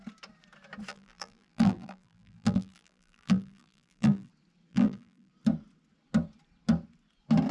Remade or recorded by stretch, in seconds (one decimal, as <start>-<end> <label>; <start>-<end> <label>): 0.0-0.9 recorded; 0.9-4.3 remade; 4.3-4.7 recorded; 4.7-5.3 remade; 5.3-7.5 recorded